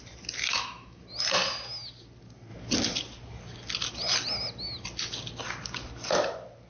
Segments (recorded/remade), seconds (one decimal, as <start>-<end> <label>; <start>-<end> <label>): 0.0-0.5 recorded; 0.5-1.0 remade; 1.0-6.7 recorded